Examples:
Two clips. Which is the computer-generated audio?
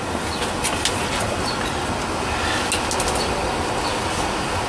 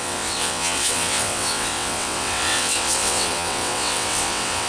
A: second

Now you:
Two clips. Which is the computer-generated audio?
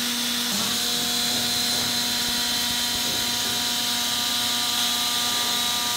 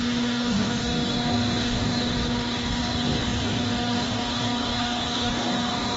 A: second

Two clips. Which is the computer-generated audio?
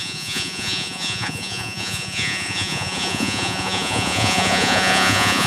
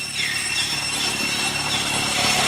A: first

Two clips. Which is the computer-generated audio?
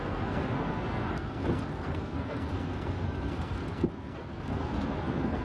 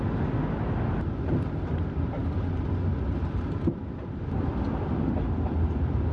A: first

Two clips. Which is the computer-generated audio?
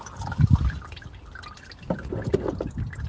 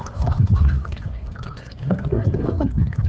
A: second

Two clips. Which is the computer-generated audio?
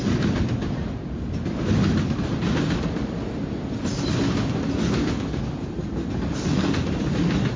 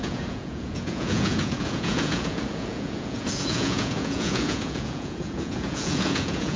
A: second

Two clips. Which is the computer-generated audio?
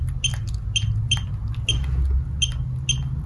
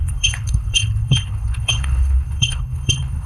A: second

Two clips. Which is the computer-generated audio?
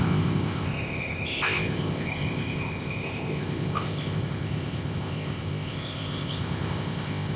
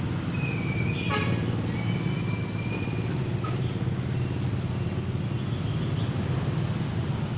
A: first